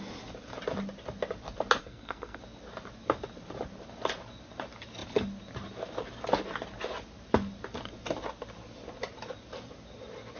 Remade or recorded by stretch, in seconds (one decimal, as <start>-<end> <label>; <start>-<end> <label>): 0.0-1.8 recorded; 1.8-2.4 remade; 2.4-10.4 recorded